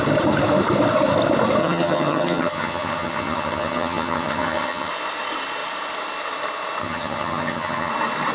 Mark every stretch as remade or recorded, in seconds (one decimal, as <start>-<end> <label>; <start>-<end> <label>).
0.0-1.6 recorded; 1.6-4.9 remade; 4.9-6.8 recorded; 6.8-7.9 remade; 7.9-8.3 recorded